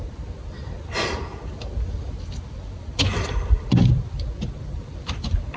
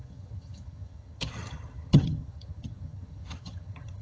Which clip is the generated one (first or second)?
second